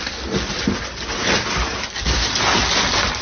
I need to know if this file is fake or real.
real